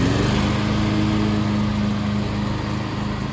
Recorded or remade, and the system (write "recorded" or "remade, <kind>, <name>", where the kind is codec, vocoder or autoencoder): recorded